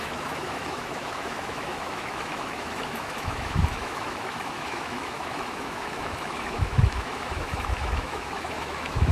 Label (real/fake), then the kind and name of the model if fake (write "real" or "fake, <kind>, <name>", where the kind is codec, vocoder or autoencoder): fake, autoencoder, DAC-VAE